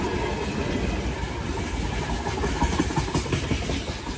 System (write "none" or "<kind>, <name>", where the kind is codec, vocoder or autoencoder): none